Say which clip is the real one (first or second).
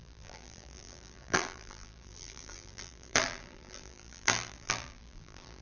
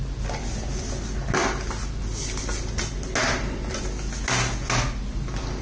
second